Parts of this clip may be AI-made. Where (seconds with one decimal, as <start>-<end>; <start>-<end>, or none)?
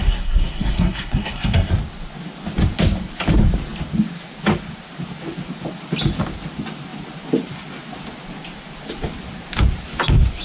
0.0-1.7